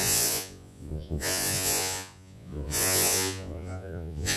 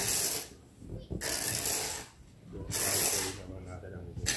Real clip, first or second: second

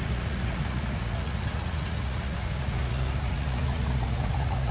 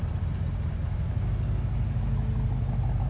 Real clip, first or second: second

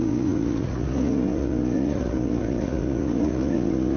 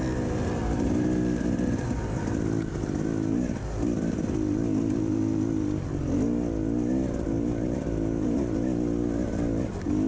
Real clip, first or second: second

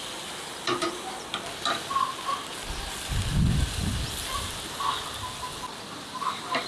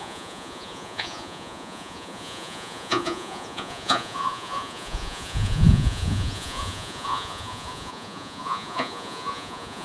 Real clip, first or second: first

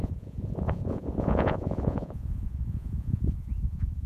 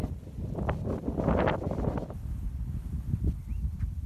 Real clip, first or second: second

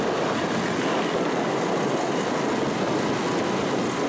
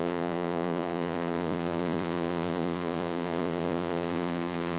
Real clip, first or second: first